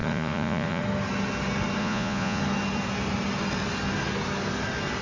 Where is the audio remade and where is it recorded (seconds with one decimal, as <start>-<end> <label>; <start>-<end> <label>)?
0.0-0.8 remade; 0.8-1.8 recorded; 1.8-2.4 remade; 2.4-5.0 recorded